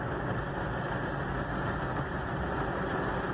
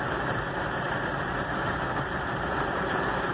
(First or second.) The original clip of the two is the first